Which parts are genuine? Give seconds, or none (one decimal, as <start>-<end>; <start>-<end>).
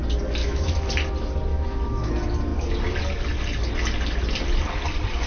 0.0-0.4; 0.9-1.5; 2.1-5.3